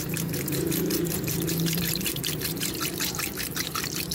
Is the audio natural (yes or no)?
no